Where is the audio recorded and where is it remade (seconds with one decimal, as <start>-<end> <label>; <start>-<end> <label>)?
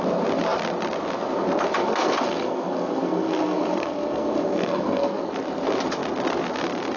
0.0-1.8 recorded; 1.8-5.3 remade; 5.3-7.0 recorded